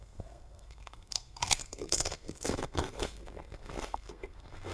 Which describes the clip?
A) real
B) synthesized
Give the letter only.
B